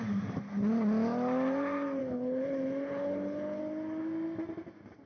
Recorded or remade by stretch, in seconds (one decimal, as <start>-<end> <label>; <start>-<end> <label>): 0.0-2.0 recorded; 2.0-3.6 remade; 3.6-5.1 recorded